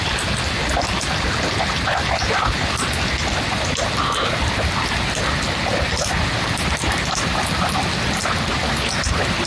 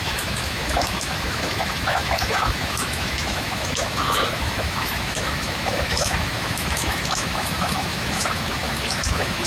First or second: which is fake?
second